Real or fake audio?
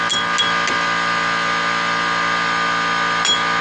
real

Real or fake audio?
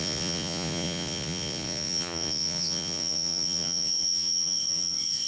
fake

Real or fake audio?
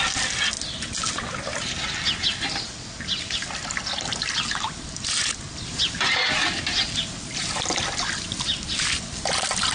real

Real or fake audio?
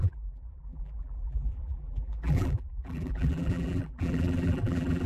fake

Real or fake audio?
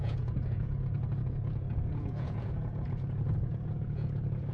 fake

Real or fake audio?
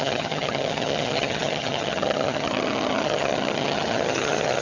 fake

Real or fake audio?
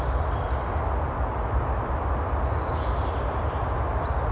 real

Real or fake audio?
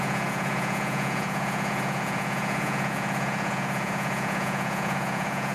fake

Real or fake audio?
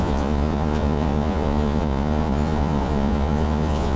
fake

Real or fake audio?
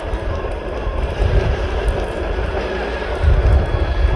fake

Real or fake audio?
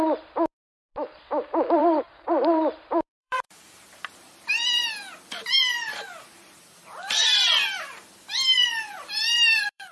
fake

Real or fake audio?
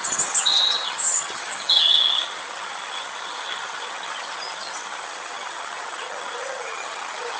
fake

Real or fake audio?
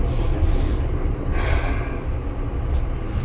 real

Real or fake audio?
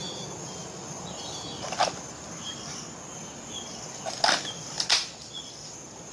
real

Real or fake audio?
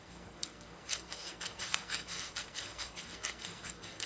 fake